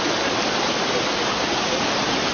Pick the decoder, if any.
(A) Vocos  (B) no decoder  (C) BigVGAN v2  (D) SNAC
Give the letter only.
B